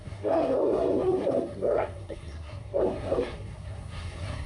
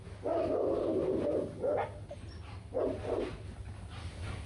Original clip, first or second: second